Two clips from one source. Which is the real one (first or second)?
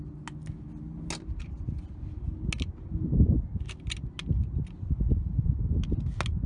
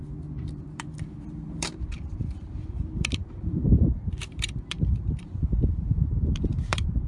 first